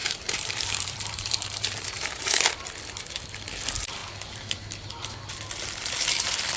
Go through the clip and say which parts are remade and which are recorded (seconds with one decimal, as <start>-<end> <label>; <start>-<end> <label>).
0.0-2.5 remade; 2.5-6.6 recorded